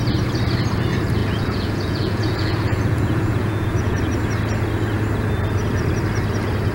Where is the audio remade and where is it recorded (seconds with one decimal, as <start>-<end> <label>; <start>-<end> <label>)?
0.0-1.2 recorded; 1.2-4.0 remade; 4.0-6.7 recorded